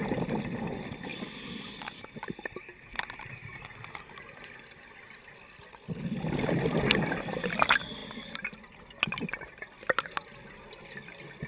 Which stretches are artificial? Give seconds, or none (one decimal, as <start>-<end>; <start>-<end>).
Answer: none